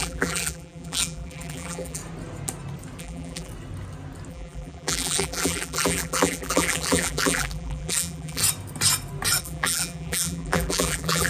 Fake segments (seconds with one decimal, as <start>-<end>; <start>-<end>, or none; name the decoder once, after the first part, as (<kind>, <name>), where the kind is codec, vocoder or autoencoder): 0.0-2.0 (vocoder, BigVGAN v2); 3.0-3.5; 4.3-8.4; 9.4-11.3